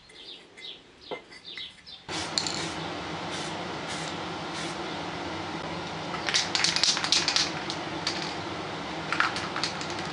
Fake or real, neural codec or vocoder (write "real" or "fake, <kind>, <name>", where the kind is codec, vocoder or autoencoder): real